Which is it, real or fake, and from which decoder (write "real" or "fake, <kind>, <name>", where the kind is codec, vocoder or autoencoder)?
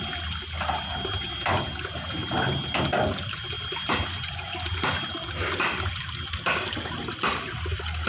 real